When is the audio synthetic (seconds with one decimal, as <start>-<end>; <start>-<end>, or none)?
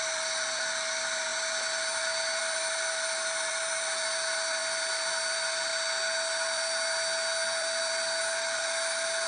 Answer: none